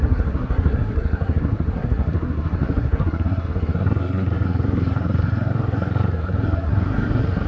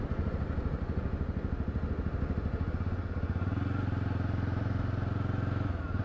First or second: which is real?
second